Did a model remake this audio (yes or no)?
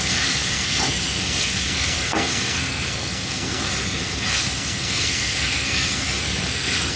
yes